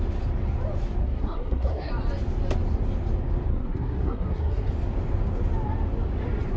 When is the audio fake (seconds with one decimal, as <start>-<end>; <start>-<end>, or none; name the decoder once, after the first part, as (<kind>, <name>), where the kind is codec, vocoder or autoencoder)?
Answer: 1.0-1.9 (codec, SNAC); 3.5-4.7